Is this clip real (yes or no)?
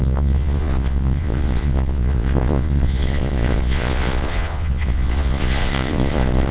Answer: no